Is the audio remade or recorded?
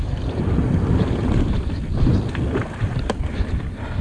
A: recorded